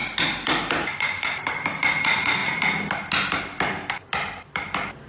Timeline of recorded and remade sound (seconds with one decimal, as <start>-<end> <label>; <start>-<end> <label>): 0.0-5.1 recorded